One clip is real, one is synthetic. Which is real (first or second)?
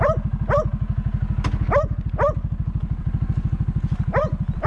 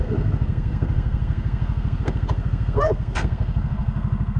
first